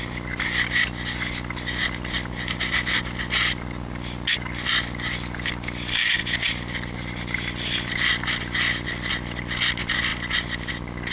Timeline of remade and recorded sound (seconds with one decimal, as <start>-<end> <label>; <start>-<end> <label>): 0.0-11.1 recorded